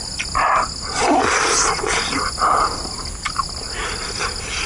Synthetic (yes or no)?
no